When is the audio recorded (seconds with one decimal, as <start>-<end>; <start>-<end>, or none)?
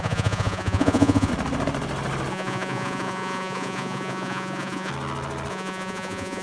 1.3-2.3; 4.9-5.5